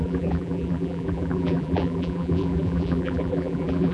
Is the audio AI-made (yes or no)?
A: yes